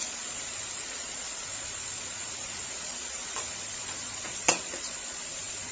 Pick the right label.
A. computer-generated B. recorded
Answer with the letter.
A